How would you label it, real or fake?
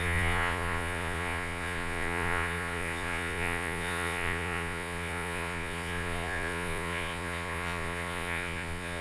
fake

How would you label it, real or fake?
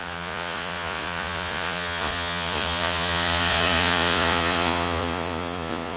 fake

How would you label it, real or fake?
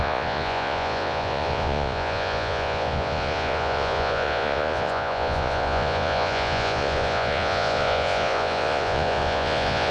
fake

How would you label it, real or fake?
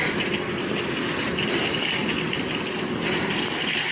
real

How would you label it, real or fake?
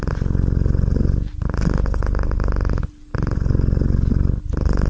real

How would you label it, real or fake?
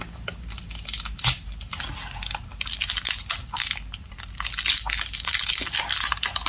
real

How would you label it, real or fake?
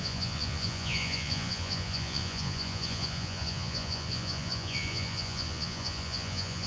fake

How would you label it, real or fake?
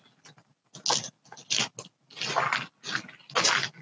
real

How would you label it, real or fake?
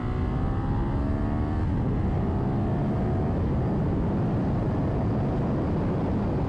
real